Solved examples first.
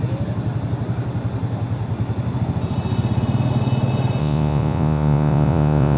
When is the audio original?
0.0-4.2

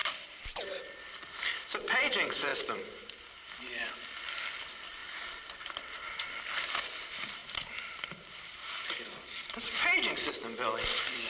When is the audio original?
5.0-5.6

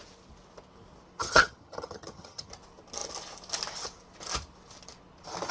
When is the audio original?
0.0-1.2; 2.5-5.5

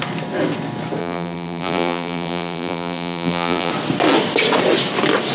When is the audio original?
0.0-1.0; 3.7-5.3

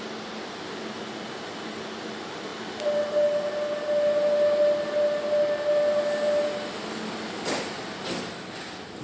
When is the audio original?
0.0-9.0

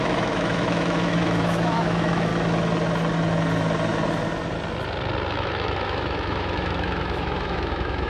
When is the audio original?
2.3-5.3

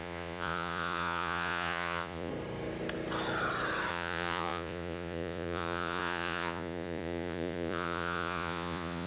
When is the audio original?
2.3-3.9